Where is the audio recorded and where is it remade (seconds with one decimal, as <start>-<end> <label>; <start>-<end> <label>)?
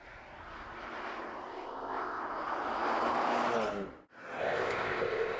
0.0-1.5 recorded; 1.5-2.2 remade; 2.2-4.4 recorded; 4.4-5.4 remade